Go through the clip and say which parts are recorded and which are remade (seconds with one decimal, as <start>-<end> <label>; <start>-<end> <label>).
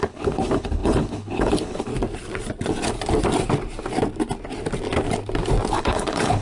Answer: 0.0-1.9 remade; 1.9-5.7 recorded; 5.7-6.4 remade